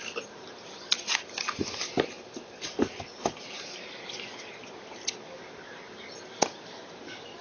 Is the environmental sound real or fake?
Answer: real